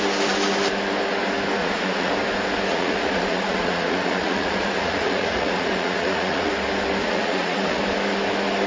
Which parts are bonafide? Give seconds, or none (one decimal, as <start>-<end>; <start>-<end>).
0.0-1.6; 2.1-2.7; 6.5-7.0; 7.8-8.7